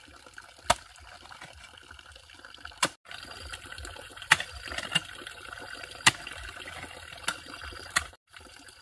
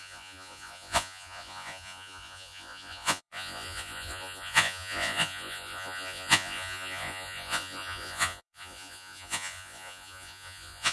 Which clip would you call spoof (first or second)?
second